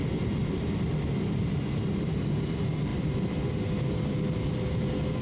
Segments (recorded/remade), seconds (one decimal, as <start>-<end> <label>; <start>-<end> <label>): 0.0-5.2 recorded